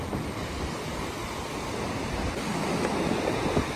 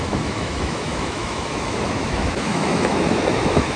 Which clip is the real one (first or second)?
first